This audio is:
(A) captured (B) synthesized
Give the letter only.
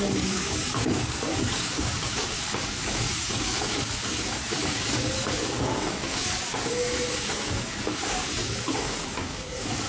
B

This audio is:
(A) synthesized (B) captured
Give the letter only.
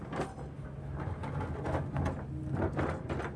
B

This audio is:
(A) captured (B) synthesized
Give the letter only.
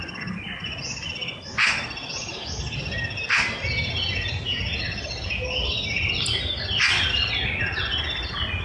A